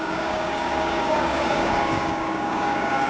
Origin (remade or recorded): remade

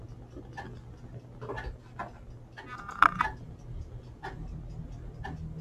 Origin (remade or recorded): recorded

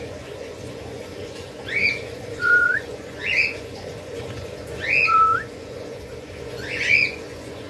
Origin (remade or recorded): remade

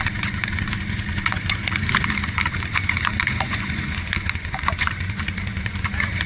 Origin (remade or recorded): remade